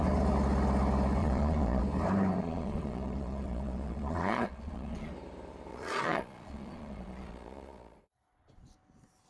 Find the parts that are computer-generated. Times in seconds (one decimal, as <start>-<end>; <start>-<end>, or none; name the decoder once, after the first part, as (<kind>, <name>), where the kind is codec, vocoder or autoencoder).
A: 1.2-1.8 (vocoder, Vocos); 2.4-5.1; 5.7-8.6